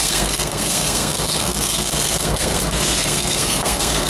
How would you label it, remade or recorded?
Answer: remade